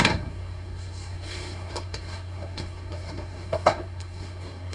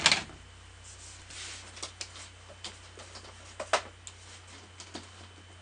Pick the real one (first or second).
second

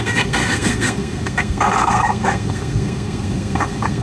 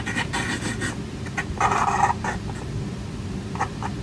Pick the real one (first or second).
second